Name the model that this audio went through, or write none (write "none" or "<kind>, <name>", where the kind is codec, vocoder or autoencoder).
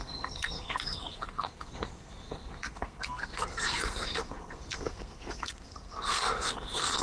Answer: codec, SNAC